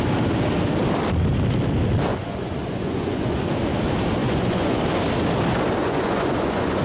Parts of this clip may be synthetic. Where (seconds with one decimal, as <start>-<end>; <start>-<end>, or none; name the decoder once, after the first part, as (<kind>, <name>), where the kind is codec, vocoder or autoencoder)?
2.1-3.4 (vocoder, Vocos); 4.2-4.8; 5.8-6.8